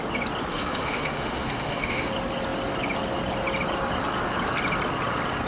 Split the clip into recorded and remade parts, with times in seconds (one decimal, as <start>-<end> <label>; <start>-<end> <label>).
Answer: 0.0-0.5 recorded; 0.5-2.1 remade; 2.1-5.5 recorded